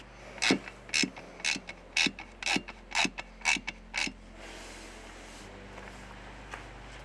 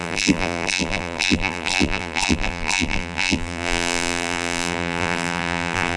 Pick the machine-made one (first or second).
second